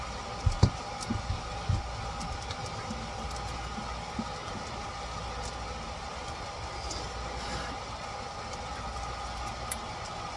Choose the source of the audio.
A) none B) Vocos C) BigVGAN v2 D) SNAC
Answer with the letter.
A